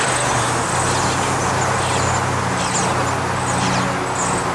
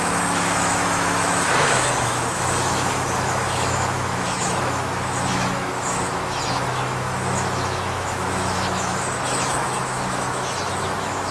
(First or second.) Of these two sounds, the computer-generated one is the second